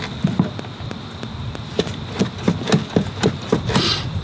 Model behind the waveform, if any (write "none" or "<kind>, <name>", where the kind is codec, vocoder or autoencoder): none